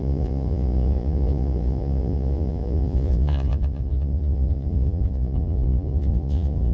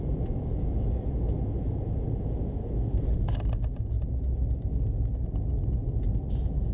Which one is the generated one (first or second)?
first